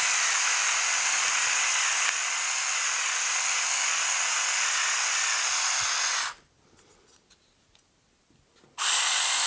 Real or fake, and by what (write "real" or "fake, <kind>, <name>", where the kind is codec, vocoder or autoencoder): real